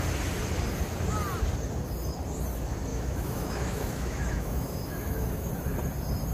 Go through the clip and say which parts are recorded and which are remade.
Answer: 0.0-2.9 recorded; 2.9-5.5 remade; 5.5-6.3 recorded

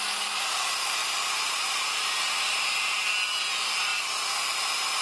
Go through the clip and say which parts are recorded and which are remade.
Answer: 0.0-5.0 recorded

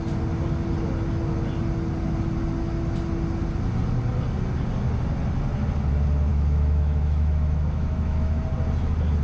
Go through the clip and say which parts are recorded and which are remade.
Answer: 0.0-6.3 recorded; 6.3-8.4 remade; 8.4-9.2 recorded

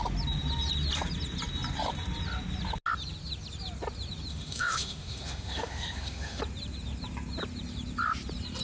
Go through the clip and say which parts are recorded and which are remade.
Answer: 0.0-4.3 recorded; 4.3-6.4 remade; 6.4-8.6 recorded

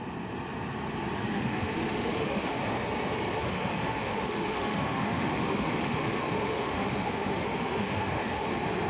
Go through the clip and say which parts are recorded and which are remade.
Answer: 0.0-1.3 recorded; 1.3-2.6 remade; 2.6-3.4 recorded; 3.4-8.5 remade; 8.5-8.9 recorded

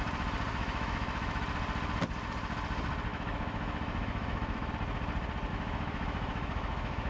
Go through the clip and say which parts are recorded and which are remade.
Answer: 0.0-0.5 recorded; 0.5-1.4 remade; 1.4-3.1 recorded; 3.1-4.7 remade; 4.7-5.5 recorded; 5.5-7.1 remade